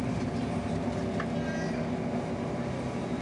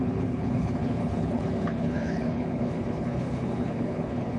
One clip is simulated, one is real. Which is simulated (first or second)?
second